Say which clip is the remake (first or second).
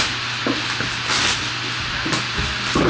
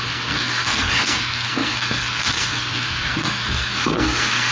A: second